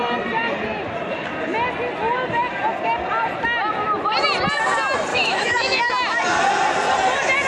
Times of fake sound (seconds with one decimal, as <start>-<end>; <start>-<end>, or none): 5.1-5.8